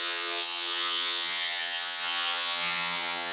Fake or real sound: fake